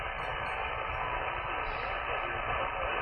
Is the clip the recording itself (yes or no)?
yes